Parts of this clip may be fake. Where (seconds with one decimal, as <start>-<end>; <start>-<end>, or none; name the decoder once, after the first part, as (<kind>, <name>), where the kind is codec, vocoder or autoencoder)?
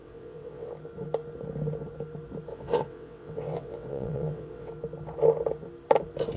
0.0-0.7 (vocoder, WaveNeXt); 2.5-4.7